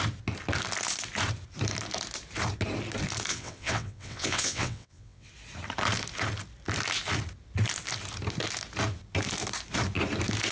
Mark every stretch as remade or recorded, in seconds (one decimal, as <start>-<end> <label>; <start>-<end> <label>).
0.0-3.3 recorded; 3.3-5.3 remade; 5.3-10.5 recorded